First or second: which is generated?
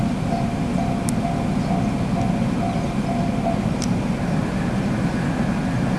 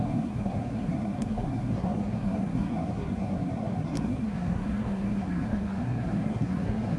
second